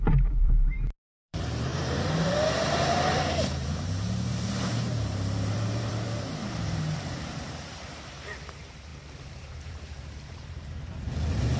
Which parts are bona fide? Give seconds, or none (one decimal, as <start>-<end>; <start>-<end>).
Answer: none